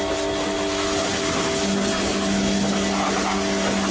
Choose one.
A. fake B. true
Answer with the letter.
B